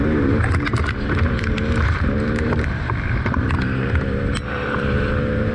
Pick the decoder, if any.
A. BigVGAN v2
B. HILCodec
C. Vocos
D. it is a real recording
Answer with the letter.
A